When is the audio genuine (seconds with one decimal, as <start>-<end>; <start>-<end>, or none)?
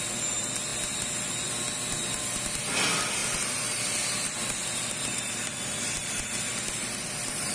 0.0-3.2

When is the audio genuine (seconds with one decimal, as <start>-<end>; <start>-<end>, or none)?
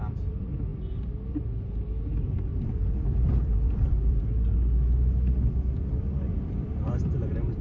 0.0-2.5; 4.2-6.3; 6.9-7.6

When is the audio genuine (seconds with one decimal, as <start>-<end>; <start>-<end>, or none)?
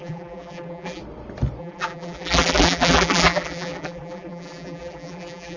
1.0-1.6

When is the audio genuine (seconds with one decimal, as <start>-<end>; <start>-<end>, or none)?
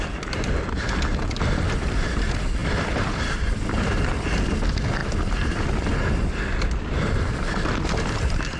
0.0-2.6; 4.6-5.0; 6.1-8.6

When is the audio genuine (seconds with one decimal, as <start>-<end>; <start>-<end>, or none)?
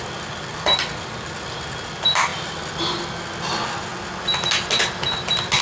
0.0-5.6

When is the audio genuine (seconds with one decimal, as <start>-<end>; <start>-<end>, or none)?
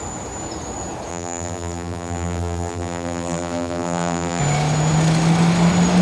0.0-1.1; 4.4-6.0